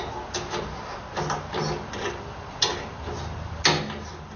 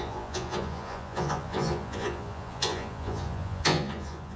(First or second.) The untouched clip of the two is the first